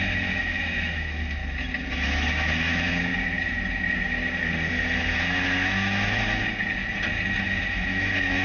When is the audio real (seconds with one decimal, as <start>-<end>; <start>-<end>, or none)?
1.4-1.9; 3.1-4.7; 6.4-7.4